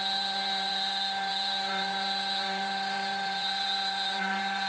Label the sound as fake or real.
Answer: fake